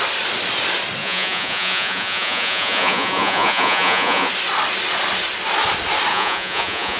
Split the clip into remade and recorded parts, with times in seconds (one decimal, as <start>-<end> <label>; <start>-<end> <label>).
0.0-1.0 recorded; 1.0-4.3 remade; 4.3-6.1 recorded; 6.1-7.0 remade